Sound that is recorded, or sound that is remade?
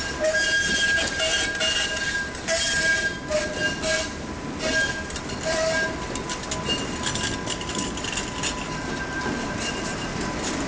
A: recorded